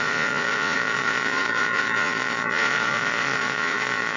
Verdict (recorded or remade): remade